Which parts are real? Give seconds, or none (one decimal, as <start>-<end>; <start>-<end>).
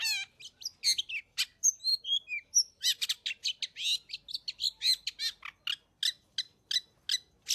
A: 0.0-7.5